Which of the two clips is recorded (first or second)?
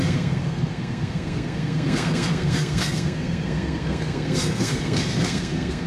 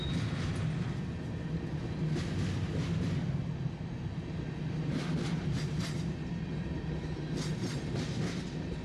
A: second